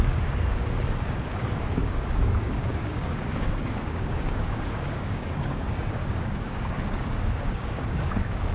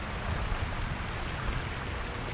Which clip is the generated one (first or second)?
first